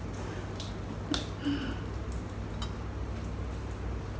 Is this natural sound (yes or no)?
yes